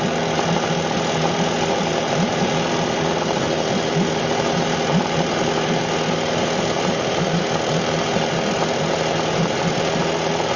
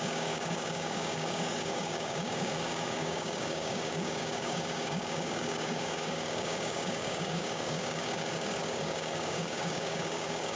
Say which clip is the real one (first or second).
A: first